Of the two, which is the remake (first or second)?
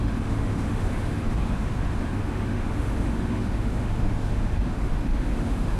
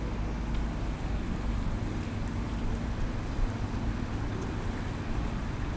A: first